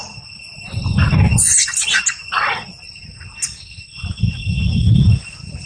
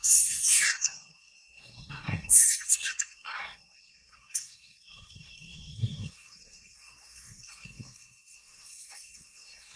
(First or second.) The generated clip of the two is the second